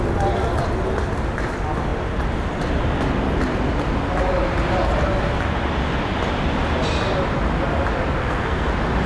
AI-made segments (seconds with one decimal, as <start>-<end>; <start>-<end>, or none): 8.2-8.7